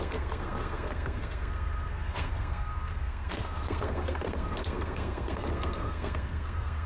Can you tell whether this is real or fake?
fake